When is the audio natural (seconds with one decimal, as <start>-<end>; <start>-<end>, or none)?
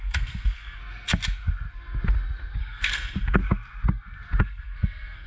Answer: 0.8-2.6; 3.4-4.4